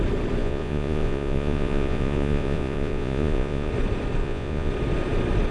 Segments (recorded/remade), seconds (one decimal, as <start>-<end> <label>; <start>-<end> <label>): 0.0-0.4 recorded; 0.4-3.7 remade; 3.7-4.2 recorded; 4.2-4.7 remade; 4.7-5.5 recorded